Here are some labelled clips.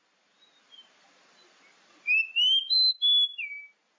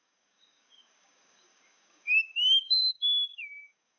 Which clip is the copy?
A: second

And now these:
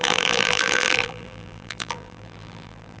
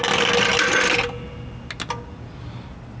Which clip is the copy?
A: first